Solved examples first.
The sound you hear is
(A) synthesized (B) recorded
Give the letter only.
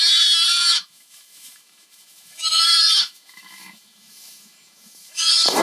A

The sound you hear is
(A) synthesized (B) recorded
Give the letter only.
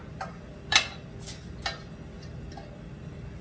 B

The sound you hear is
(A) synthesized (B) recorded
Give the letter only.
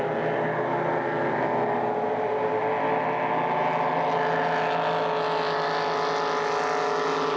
B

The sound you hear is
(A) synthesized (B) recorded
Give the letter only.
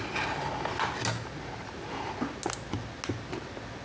B